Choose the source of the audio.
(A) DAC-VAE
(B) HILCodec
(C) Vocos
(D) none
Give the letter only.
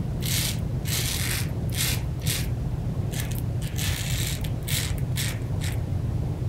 D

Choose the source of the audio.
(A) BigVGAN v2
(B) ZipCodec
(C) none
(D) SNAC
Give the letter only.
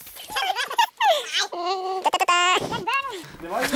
C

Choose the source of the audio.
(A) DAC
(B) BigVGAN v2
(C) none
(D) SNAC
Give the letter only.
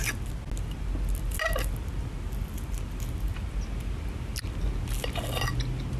C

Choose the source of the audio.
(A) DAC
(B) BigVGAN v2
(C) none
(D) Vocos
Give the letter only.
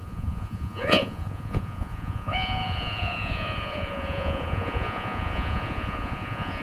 D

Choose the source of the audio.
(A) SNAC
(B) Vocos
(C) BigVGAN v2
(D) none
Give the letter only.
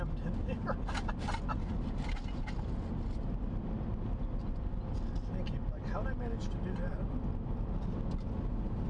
D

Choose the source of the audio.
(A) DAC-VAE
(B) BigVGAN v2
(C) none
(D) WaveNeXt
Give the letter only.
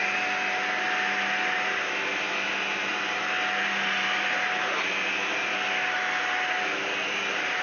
C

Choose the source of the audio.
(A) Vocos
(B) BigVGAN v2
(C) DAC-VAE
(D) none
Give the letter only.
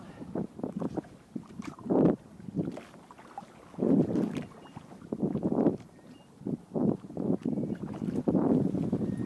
D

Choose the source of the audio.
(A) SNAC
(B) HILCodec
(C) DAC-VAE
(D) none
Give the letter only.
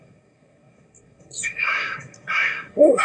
A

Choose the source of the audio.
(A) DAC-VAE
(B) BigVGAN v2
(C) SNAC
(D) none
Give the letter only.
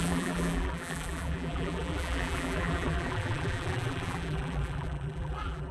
B